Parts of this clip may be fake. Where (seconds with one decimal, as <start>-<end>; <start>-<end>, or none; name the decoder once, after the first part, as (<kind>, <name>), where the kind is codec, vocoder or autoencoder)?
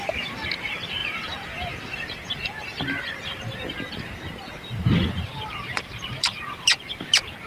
0.0-7.5 (vocoder, BigVGAN v2)